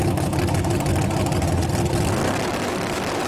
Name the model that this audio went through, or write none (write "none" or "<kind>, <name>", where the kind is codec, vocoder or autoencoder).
none